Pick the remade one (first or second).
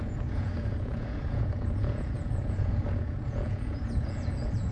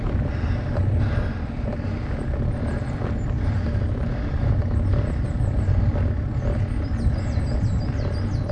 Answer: first